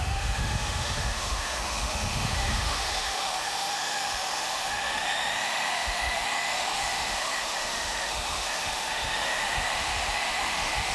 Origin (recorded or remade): remade